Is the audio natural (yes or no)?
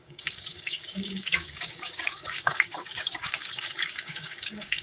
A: no